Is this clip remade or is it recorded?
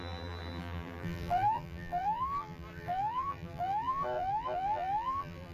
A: remade